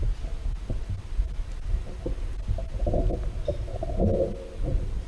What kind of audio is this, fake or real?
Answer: real